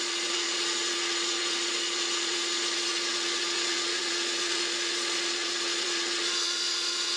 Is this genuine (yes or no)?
no